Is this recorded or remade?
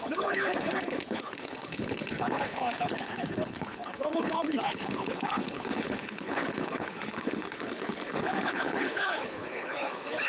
remade